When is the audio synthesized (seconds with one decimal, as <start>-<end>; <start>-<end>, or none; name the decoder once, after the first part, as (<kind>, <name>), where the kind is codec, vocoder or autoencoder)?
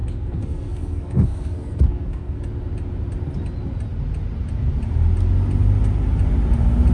0.0-2.4 (codec, SNAC)